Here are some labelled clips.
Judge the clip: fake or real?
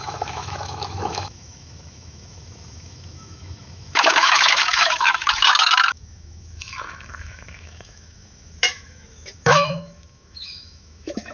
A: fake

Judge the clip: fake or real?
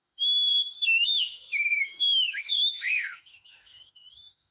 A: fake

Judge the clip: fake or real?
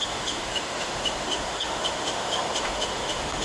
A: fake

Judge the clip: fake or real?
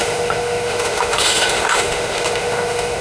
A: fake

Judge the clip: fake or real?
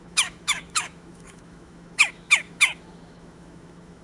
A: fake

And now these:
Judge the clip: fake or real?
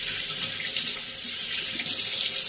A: real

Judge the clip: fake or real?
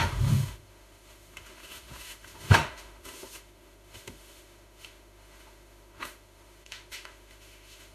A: fake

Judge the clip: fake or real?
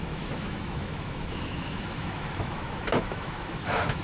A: fake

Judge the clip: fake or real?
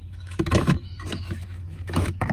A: fake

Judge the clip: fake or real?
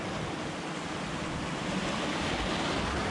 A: real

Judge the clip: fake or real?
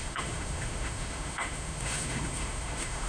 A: fake